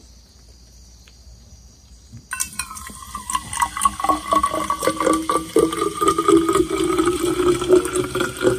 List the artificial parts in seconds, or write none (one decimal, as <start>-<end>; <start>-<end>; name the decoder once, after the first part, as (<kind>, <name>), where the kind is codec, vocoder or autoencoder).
none